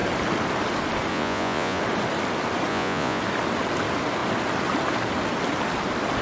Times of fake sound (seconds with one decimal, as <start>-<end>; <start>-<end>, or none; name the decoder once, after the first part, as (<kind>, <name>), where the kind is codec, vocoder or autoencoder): 1.1-1.8 (vocoder, Vocos); 2.7-3.2